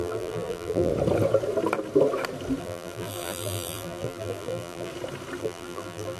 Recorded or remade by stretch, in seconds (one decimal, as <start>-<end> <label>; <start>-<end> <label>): 0.0-0.9 remade; 0.9-2.6 recorded; 2.6-4.9 remade; 4.9-5.4 recorded; 5.4-6.2 remade